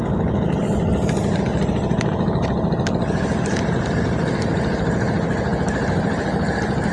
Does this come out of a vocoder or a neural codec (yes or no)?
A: no